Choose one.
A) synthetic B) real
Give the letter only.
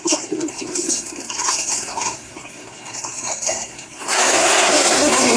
A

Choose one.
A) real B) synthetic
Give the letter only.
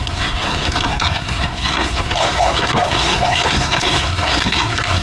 B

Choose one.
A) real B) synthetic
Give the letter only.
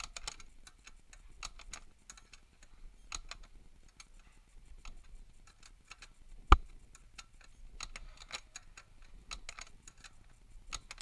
A